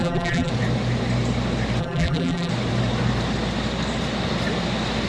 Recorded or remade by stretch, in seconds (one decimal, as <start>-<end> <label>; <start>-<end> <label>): 0.0-0.5 remade; 0.5-1.8 recorded; 1.8-2.5 remade; 2.5-5.1 recorded